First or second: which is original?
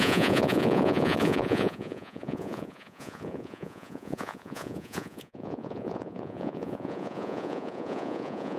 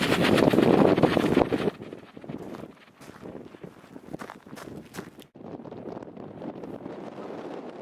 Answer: second